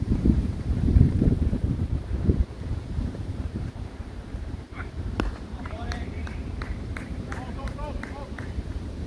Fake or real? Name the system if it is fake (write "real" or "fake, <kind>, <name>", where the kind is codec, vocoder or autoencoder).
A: fake, vocoder, BigVGAN v2